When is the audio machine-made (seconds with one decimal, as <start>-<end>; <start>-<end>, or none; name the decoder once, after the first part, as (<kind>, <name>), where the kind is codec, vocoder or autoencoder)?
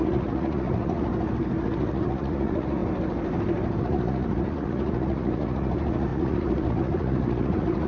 0.0-1.1 (vocoder, Vocos); 1.6-2.8; 3.8-7.9